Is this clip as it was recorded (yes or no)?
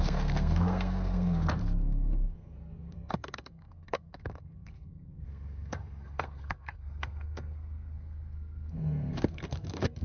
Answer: no